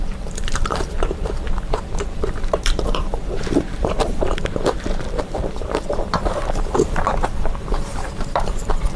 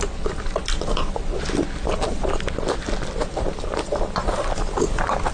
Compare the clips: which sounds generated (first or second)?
first